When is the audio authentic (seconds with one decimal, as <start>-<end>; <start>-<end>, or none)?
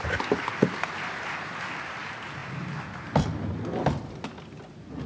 0.0-5.1